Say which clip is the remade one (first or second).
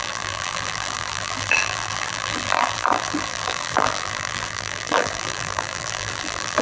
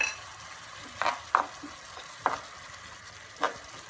first